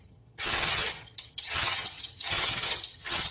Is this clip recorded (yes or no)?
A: no